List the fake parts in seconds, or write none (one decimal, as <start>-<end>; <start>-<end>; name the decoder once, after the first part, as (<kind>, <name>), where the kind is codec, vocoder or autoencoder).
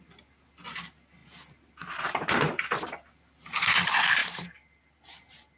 none